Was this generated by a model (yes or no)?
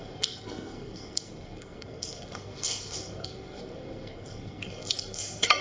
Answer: yes